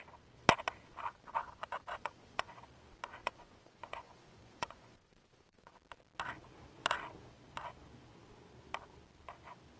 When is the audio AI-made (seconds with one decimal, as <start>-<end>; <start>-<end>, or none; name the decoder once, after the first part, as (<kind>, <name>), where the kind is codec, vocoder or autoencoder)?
1.4-2.5 (vocoder, Vocos); 3.2-5.7